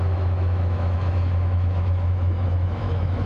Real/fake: fake